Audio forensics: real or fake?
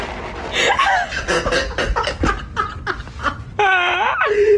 real